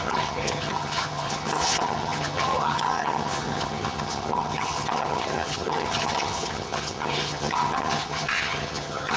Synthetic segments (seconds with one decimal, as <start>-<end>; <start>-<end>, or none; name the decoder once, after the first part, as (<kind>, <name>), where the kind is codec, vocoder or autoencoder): 0.0-9.2 (vocoder, HiFi-GAN)